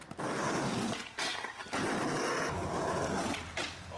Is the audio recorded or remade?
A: recorded